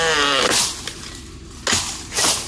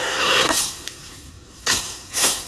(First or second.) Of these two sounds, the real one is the first